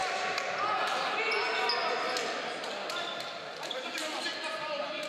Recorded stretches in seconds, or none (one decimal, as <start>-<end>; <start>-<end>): 0.0-3.1